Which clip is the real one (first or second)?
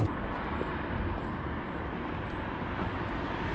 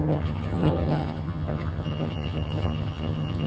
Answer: first